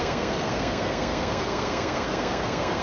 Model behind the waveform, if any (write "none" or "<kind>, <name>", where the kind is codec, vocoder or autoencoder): codec, SNAC